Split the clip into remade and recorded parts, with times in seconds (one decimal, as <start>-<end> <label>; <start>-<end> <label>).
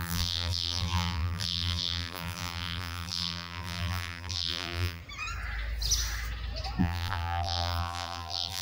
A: 0.0-5.0 remade; 5.0-6.8 recorded; 6.8-8.6 remade